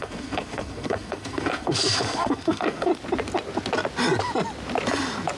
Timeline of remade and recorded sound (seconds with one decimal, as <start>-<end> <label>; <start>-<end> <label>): 0.0-2.9 remade; 2.9-5.4 recorded